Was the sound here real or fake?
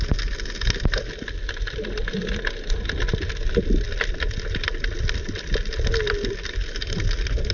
real